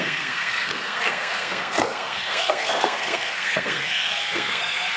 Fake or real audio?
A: fake